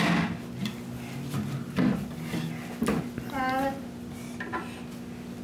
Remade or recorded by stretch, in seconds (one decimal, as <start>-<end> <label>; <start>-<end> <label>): 0.0-5.4 recorded